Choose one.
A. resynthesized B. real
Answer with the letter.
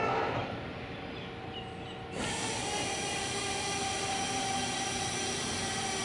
B